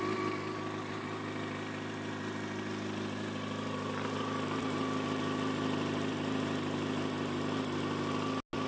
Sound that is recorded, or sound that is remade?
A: recorded